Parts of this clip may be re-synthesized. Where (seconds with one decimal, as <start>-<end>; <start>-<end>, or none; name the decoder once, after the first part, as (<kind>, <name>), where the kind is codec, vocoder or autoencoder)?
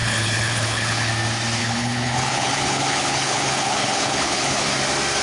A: 0.0-1.1 (codec, HILCodec); 1.6-4.7